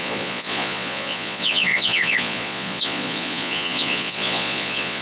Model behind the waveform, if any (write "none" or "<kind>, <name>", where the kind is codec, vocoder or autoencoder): vocoder, Vocos